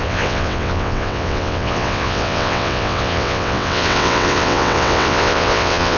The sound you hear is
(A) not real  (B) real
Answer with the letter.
A